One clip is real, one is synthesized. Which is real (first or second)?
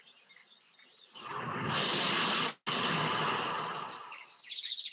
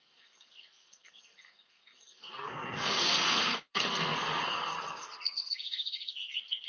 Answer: first